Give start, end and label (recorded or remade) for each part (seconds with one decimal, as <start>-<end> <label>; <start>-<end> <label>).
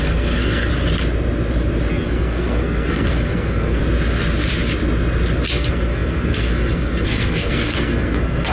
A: 0.0-0.7 remade; 0.7-1.9 recorded; 1.9-3.8 remade; 3.8-5.5 recorded; 5.5-8.5 remade